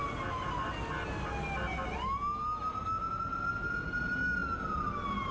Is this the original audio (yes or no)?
yes